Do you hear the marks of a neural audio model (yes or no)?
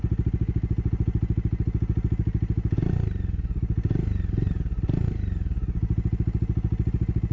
no